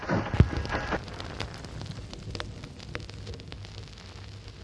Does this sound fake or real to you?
real